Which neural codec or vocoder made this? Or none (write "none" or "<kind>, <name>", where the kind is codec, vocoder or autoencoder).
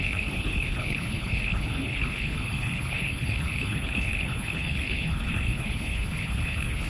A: codec, HILCodec